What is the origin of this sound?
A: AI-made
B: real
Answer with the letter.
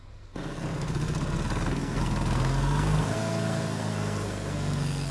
A